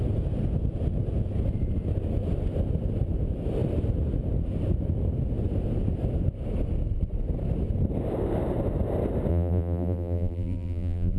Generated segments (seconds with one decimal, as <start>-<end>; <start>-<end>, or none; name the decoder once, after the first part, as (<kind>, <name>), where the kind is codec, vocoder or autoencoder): 9.3-11.2 (vocoder, BigVGAN v2)